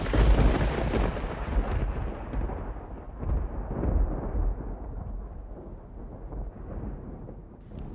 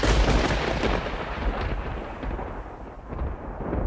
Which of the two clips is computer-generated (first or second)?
second